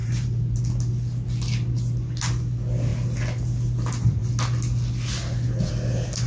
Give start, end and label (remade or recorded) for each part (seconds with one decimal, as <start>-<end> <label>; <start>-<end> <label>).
0.0-0.6 remade; 0.6-6.3 recorded

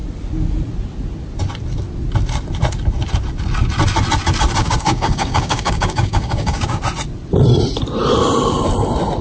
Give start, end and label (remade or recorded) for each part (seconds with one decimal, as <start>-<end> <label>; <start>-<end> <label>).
0.0-4.6 recorded; 4.6-6.8 remade; 6.8-9.2 recorded

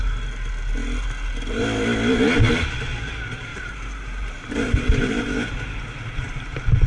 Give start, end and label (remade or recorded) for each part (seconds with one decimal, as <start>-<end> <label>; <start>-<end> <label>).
0.0-3.5 recorded; 3.5-5.5 remade; 5.5-6.9 recorded